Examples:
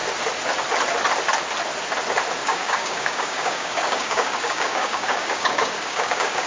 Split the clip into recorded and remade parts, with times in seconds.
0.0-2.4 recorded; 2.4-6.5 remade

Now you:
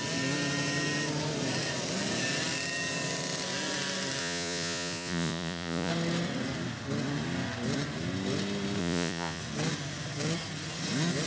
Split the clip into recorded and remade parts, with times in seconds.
0.0-4.2 recorded; 4.2-5.9 remade; 5.9-8.8 recorded; 8.8-9.4 remade; 9.4-11.3 recorded